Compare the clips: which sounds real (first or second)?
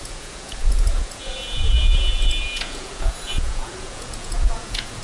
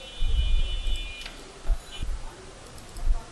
second